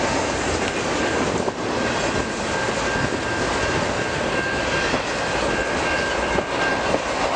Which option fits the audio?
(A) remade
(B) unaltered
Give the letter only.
B